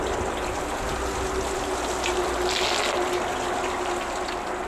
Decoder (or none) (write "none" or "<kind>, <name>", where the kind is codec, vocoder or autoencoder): none